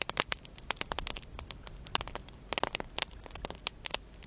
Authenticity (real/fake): real